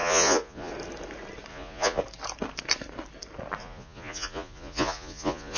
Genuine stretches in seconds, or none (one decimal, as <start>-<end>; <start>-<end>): 0.7-1.5; 2.0-3.6